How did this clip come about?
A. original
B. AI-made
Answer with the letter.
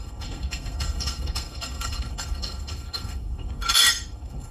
B